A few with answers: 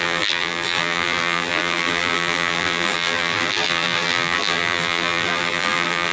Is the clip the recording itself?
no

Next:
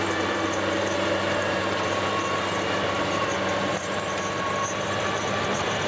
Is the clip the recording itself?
no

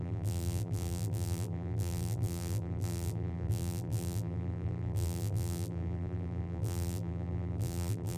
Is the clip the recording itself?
no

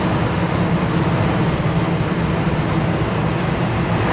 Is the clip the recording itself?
yes